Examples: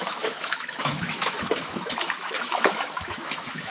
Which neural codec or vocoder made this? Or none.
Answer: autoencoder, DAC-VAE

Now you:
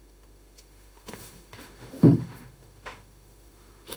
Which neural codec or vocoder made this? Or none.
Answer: autoencoder, DAC-VAE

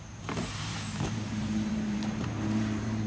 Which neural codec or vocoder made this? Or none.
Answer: vocoder, BigVGAN v2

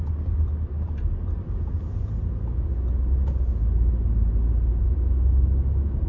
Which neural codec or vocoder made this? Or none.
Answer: none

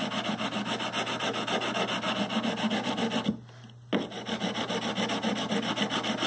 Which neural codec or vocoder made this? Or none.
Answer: none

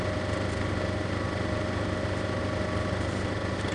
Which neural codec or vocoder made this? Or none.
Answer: none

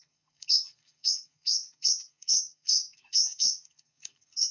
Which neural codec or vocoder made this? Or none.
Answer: codec, SNAC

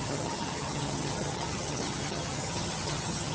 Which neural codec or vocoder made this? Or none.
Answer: vocoder, HiFi-GAN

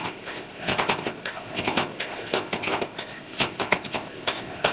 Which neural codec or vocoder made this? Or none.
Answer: codec, ZipCodec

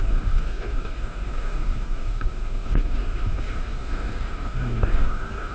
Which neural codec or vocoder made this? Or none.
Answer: codec, DAC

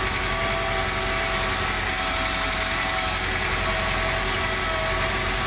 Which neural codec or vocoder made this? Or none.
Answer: none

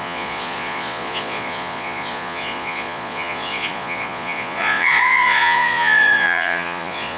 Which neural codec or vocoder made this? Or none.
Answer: vocoder, Vocos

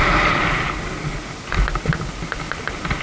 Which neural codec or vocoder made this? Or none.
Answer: none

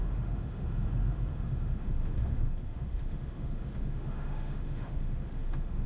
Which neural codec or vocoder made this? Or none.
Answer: autoencoder, DAC-VAE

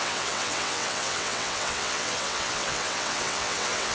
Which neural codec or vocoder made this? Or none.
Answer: vocoder, WaveNeXt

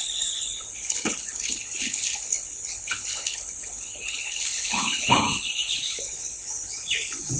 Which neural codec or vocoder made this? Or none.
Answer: codec, HILCodec